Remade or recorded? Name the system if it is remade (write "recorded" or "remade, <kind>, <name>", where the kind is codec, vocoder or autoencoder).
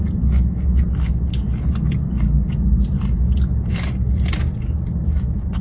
recorded